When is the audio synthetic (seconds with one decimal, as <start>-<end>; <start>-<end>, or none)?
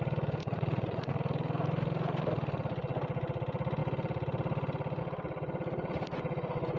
0.4-1.1